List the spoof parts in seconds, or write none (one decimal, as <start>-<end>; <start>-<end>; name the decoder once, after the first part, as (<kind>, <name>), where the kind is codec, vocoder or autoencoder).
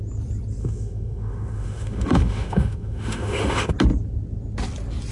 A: 0.6-3.7 (autoencoder, DAC-VAE)